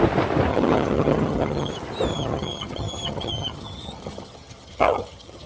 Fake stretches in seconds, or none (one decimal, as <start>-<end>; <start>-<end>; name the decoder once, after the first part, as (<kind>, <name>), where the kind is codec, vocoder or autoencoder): 0.5-1.7 (vocoder, HiFi-GAN); 2.1-5.5